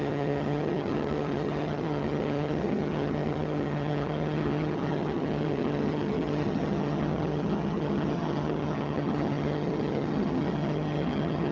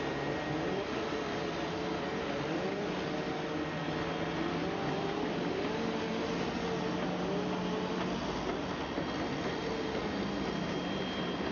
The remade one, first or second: first